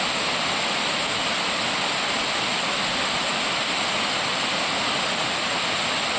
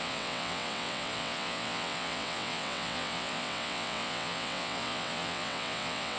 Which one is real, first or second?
first